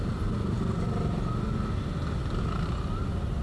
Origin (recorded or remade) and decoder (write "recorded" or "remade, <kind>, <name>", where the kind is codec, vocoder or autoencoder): recorded